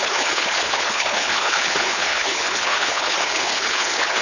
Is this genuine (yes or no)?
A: no